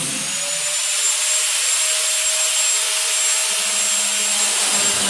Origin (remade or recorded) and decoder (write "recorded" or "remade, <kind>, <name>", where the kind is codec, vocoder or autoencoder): recorded